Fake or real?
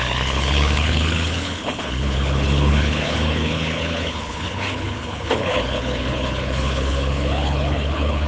fake